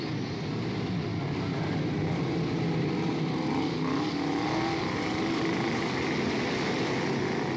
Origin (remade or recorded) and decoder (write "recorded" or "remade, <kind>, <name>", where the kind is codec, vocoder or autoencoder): recorded